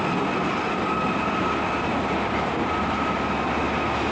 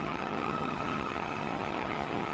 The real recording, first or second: first